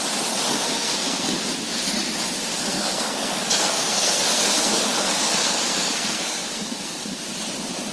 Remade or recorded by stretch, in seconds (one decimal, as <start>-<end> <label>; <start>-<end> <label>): 0.0-0.5 recorded; 0.5-1.4 remade; 1.4-2.5 recorded; 2.5-7.2 remade; 7.2-7.9 recorded